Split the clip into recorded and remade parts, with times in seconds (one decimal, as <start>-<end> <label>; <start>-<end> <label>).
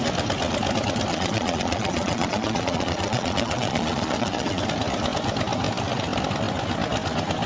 0.0-1.1 recorded; 1.1-4.6 remade; 4.6-7.5 recorded